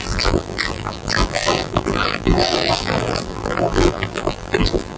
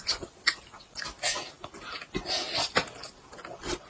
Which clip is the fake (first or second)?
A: first